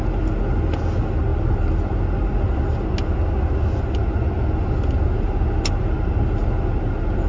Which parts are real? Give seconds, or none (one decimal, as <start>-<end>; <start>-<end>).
0.0-7.3